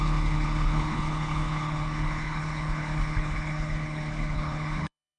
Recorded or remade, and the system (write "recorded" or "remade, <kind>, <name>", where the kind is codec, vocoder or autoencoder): remade, codec, HILCodec